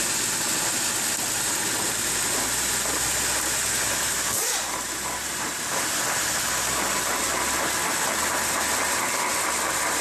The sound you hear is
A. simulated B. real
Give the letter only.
B